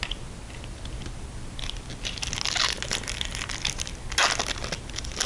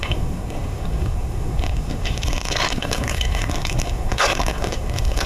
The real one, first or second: first